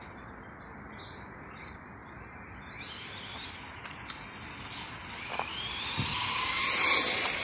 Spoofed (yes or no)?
no